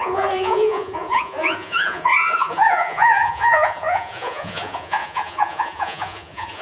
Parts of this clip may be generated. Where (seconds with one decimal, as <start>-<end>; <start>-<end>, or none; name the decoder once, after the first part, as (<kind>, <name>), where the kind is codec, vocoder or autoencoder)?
0.0-6.6 (vocoder, Vocos)